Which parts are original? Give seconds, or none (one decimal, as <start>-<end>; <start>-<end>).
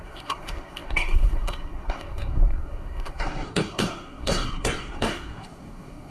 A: none